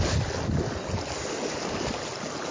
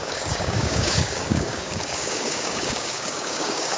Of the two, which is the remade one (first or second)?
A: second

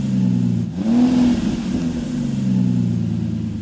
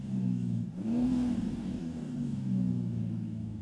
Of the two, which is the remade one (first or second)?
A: second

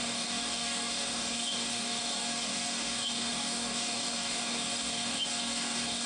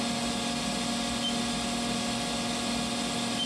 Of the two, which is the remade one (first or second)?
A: first